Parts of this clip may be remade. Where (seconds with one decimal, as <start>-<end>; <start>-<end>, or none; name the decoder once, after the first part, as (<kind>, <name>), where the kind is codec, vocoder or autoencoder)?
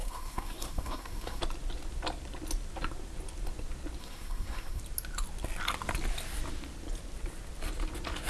0.0-1.4 (codec, SNAC); 4.0-4.8